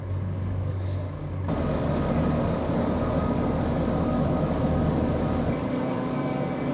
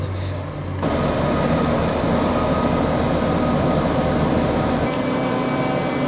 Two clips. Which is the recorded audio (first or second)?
second